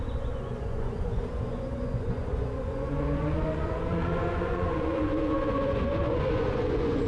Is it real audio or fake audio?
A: fake